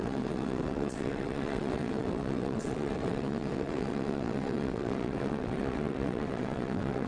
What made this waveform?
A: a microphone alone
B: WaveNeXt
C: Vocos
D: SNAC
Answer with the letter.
B